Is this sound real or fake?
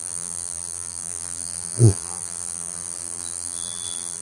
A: fake